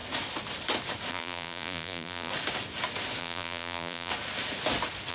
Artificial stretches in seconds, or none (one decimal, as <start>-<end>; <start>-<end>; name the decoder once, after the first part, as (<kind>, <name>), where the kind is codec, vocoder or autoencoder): 1.1-2.3 (vocoder, BigVGAN v2); 3.2-4.1